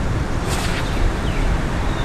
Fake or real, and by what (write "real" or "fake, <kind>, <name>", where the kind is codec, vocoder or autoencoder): fake, vocoder, BigVGAN v2